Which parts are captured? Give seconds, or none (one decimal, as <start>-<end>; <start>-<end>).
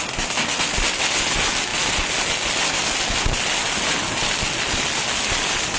0.0-5.8